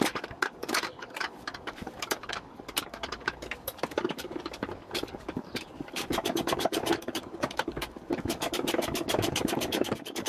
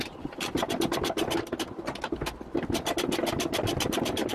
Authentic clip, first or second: second